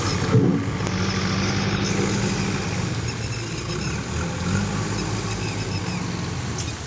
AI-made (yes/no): no